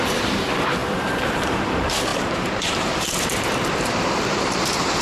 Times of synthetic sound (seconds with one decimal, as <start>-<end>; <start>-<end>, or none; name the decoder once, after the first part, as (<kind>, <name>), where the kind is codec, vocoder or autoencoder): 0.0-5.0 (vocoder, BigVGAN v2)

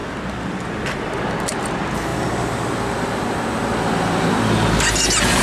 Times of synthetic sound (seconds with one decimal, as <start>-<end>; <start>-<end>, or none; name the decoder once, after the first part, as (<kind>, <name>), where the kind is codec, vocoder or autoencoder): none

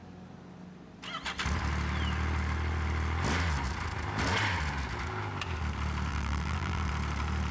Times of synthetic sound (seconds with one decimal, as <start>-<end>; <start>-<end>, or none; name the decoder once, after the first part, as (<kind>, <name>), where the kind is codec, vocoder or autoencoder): 6.1-6.9 (vocoder, BigVGAN v2)

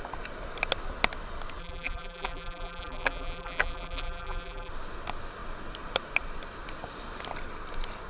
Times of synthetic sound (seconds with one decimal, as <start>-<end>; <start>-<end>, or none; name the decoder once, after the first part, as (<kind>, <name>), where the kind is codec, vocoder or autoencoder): 1.6-4.7 (vocoder, BigVGAN v2)

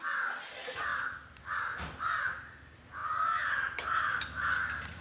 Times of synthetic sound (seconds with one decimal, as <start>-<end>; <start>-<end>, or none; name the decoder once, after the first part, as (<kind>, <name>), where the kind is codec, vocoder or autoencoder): none